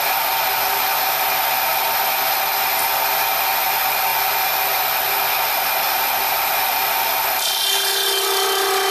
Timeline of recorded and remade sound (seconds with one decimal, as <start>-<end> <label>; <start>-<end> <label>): 0.0-8.9 recorded